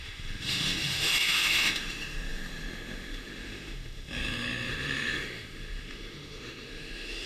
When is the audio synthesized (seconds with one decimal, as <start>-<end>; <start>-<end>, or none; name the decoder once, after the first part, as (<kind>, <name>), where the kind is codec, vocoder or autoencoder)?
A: 0.0-7.3 (autoencoder, DAC-VAE)